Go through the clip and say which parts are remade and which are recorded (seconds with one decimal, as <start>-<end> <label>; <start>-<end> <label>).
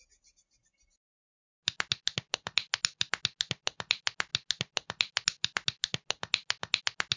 0.0-7.2 recorded